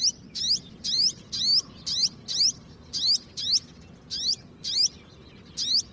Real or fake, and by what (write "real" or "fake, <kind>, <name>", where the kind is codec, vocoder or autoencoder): real